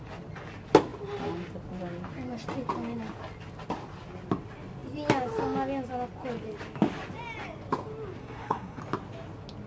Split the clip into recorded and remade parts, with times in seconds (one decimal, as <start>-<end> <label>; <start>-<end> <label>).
0.0-8.2 recorded; 8.2-8.8 remade; 8.8-9.7 recorded